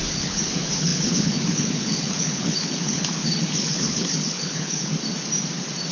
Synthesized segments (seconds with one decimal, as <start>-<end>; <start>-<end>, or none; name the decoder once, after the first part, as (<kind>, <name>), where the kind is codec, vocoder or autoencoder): 0.0-4.9 (codec, HILCodec)